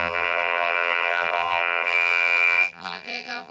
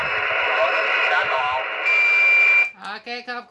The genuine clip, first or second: second